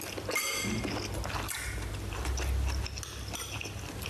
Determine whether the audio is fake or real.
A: real